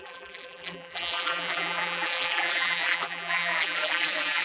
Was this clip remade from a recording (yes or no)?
yes